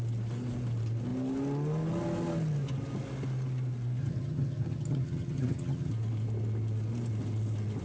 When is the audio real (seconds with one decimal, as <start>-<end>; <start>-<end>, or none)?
0.0-4.0; 5.9-7.8